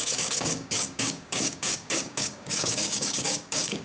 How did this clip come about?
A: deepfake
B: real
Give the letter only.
A